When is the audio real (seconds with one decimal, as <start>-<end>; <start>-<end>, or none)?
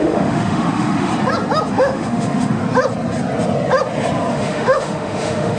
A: 1.1-1.7; 2.6-4.3